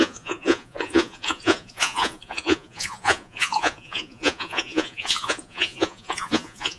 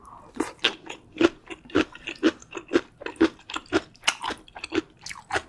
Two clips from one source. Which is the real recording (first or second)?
second